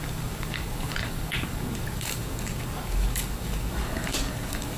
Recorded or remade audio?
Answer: remade